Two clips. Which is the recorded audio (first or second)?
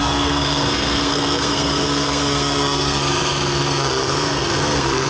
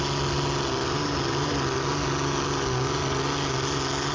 second